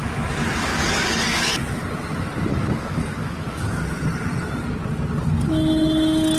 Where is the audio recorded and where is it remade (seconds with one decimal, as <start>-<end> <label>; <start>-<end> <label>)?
0.0-0.7 recorded; 0.7-1.5 remade; 1.5-2.5 recorded; 2.5-3.8 remade; 3.8-6.4 recorded